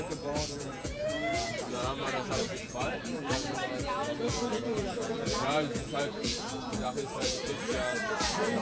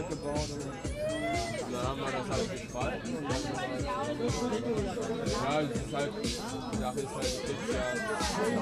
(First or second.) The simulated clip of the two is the first